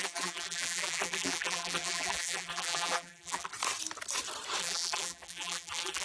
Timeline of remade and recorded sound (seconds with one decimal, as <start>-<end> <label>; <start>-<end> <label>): 0.0-3.5 remade; 3.5-4.6 recorded; 4.6-6.0 remade